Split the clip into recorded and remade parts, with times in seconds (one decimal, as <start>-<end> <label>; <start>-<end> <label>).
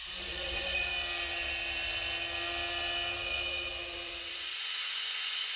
0.0-0.9 remade; 0.9-4.3 recorded; 4.3-5.6 remade